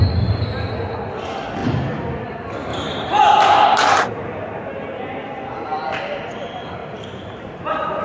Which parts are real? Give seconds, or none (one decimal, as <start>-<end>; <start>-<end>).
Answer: 0.0-1.6; 2.2-2.7; 3.2-6.8